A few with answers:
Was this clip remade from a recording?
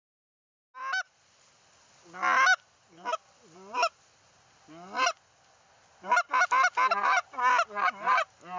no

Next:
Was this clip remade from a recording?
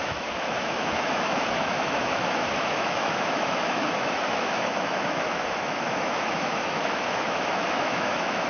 yes